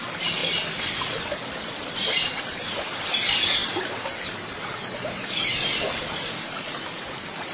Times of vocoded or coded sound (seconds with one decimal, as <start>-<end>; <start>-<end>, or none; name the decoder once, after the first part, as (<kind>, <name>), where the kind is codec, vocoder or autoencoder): 0.4-1.9 (vocoder, BigVGAN v2)